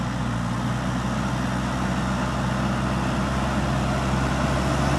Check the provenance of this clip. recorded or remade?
recorded